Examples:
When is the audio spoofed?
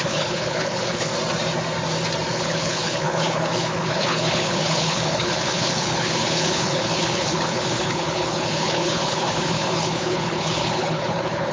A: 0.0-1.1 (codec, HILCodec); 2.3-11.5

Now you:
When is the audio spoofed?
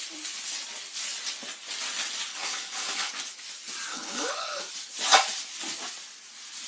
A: 2.3-3.1 (codec, HILCodec); 3.9-4.6